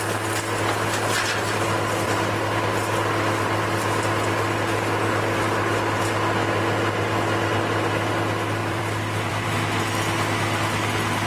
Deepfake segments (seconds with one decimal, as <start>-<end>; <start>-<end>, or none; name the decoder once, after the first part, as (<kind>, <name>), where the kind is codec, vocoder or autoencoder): 8.6-9.5 (vocoder, BigVGAN v2)